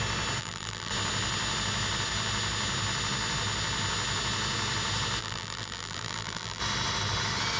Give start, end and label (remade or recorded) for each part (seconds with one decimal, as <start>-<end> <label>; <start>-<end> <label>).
0.0-0.4 recorded; 0.4-0.9 remade; 0.9-5.2 recorded; 5.2-6.6 remade; 6.6-7.6 recorded